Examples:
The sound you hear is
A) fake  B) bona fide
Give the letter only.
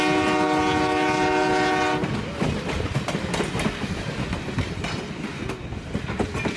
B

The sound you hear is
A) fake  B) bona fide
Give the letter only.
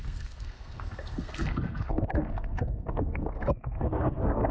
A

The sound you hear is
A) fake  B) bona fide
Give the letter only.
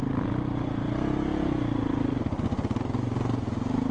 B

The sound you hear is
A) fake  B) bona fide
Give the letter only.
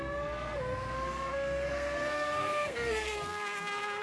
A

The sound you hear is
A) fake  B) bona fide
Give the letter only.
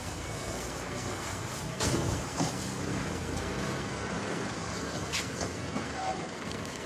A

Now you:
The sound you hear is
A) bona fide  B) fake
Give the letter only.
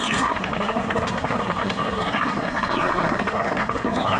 B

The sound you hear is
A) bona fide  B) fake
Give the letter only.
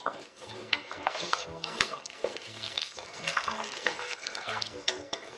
B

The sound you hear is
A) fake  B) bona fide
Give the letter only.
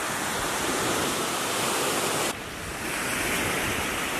B